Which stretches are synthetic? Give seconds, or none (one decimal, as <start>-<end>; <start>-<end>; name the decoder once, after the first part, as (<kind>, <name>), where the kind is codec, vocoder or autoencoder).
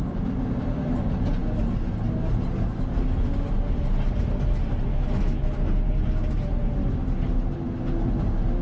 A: 4.9-5.6 (autoencoder, DAC-VAE)